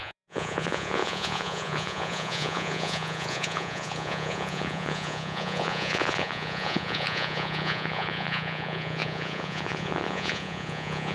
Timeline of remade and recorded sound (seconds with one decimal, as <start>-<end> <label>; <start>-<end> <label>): 0.0-11.1 remade